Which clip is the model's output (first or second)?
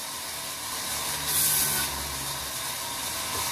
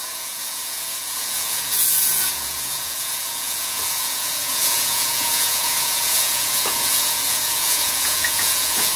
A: second